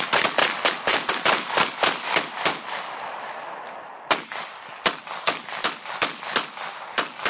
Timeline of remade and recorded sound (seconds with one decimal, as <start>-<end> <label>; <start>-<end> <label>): 0.0-2.5 remade; 2.5-5.2 recorded; 5.2-7.3 remade